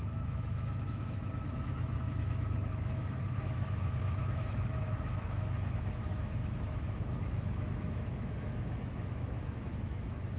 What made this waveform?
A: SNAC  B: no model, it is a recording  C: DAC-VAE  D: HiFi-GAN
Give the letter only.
C